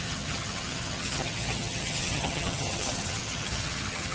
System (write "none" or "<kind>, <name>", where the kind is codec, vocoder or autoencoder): vocoder, HiFi-GAN